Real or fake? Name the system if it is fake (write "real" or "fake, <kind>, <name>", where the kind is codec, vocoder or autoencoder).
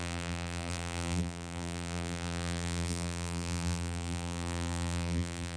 fake, vocoder, BigVGAN v2